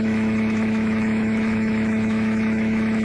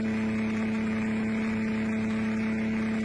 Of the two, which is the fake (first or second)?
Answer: first